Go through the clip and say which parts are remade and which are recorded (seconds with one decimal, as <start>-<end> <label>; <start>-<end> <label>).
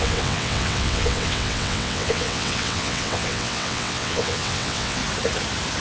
0.0-5.0 remade; 5.0-5.8 recorded